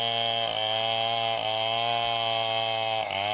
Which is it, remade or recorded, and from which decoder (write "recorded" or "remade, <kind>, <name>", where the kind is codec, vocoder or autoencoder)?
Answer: recorded